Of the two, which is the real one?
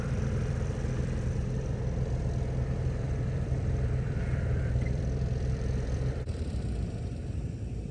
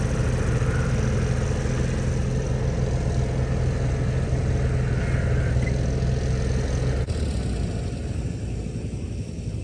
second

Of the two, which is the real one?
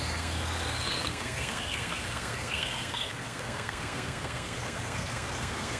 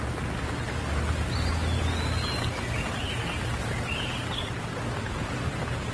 second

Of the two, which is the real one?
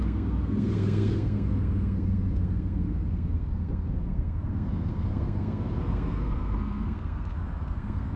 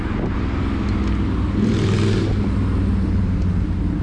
second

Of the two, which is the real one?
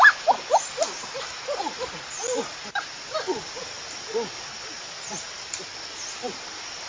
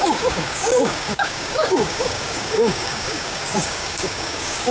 first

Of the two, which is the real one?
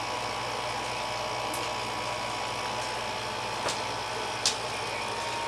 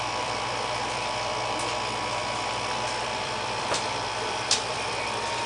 first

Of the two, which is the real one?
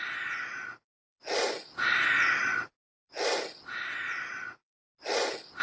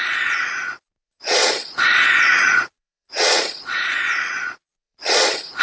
first